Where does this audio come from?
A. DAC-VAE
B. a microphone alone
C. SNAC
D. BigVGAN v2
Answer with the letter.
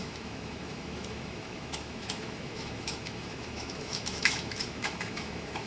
A